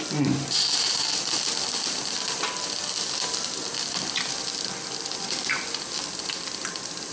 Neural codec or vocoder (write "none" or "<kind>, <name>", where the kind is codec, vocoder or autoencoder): vocoder, BigVGAN v2